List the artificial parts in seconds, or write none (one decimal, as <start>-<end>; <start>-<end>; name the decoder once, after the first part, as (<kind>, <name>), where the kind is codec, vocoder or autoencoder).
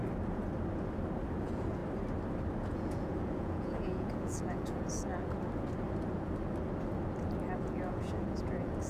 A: 1.4-1.8 (vocoder, Vocos); 2.7-5.1; 7.6-8.9